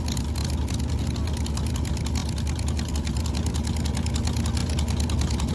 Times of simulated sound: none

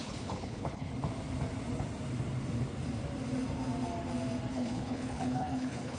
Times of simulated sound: 0.0-0.9 (codec, HILCodec); 4.5-6.0

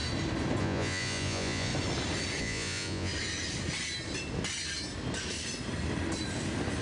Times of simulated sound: 0.6-1.7 (vocoder, Vocos); 2.4-3.1